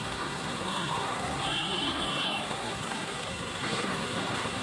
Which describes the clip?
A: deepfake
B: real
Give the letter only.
A